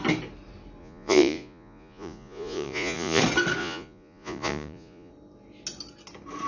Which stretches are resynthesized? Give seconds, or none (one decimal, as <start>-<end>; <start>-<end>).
0.8-3.2; 3.6-5.1